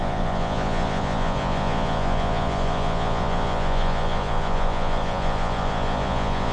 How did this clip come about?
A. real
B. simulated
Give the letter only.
B